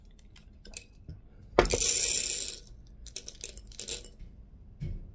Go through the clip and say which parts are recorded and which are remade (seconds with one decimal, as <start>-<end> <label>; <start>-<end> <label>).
0.0-1.1 remade; 1.1-4.2 recorded; 4.2-5.1 remade